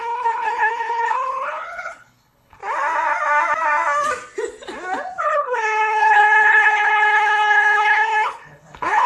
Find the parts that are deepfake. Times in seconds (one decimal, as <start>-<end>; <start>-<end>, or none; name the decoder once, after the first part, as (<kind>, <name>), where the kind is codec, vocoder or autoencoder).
0.0-2.6 (codec, HILCodec); 5.2-9.1